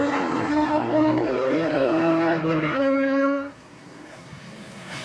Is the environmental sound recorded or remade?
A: remade